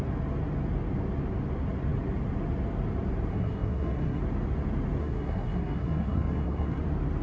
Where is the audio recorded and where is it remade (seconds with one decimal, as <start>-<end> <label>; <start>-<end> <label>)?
0.0-3.3 recorded; 3.3-4.2 remade; 4.2-5.0 recorded; 5.0-6.8 remade; 6.8-7.2 recorded